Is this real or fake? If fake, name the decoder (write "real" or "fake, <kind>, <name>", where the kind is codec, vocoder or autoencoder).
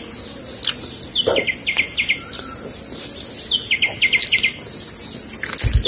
real